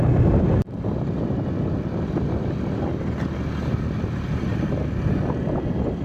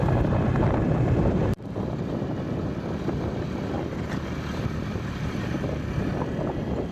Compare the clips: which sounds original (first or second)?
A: first